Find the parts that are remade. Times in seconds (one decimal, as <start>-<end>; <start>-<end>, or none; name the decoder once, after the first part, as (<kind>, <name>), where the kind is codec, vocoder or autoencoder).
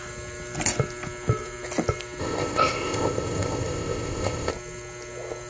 2.2-4.5 (codec, ZipCodec)